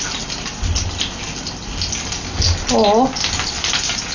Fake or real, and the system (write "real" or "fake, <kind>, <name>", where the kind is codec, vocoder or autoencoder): real